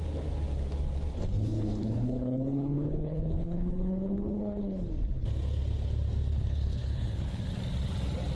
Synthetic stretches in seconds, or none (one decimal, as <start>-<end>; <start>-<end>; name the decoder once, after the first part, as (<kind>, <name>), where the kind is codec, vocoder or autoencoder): 1.1-4.9 (codec, HILCodec); 6.3-7.4